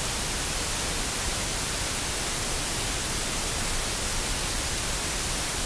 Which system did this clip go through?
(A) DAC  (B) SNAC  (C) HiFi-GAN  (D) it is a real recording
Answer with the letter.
D